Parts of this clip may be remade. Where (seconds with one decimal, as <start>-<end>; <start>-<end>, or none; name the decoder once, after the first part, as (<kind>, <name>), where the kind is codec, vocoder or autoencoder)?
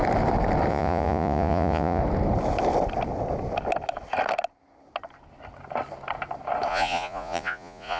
0.7-2.0 (vocoder, Vocos); 6.7-8.0